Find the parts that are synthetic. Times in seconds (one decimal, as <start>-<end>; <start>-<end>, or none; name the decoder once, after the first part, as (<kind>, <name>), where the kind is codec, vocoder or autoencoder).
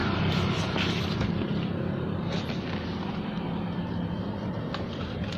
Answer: 0.0-1.3 (vocoder, BigVGAN v2)